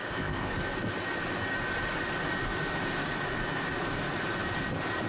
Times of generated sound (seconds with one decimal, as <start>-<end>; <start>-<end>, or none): 0.0-0.5